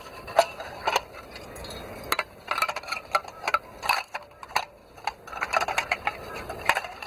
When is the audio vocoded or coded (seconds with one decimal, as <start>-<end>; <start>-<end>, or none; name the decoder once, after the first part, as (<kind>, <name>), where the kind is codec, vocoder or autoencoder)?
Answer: 0.0-1.3 (vocoder, BigVGAN v2); 2.5-4.8; 5.3-7.1